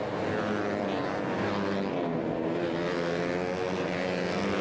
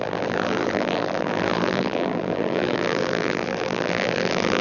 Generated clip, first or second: second